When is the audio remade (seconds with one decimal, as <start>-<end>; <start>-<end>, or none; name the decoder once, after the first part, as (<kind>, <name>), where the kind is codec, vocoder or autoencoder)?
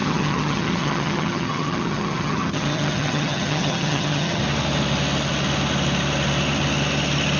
0.0-4.4 (vocoder, HiFi-GAN)